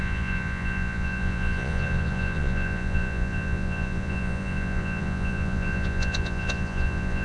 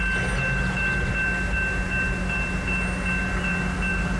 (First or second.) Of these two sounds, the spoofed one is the first